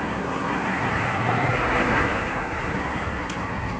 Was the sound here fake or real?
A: fake